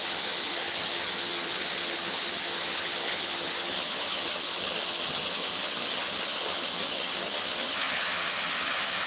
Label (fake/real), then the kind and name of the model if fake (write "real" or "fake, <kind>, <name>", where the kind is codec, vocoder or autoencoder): fake, vocoder, HiFi-GAN